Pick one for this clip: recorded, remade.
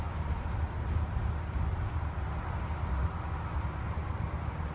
recorded